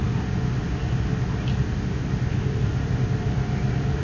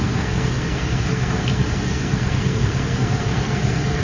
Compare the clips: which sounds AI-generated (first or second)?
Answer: second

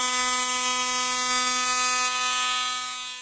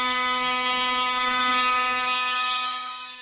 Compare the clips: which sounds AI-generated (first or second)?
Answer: second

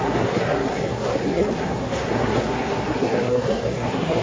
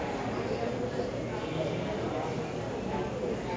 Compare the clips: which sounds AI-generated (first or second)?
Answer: first